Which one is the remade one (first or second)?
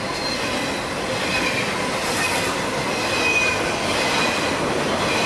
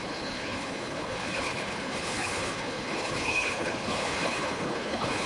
second